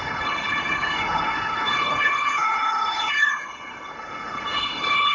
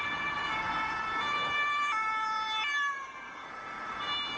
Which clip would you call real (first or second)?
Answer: second